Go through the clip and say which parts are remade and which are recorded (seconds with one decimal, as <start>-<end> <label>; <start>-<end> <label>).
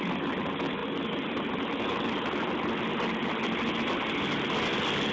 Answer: 0.0-5.1 recorded